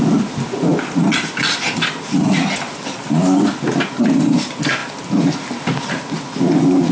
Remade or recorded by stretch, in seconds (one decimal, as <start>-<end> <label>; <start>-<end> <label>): 0.0-6.9 recorded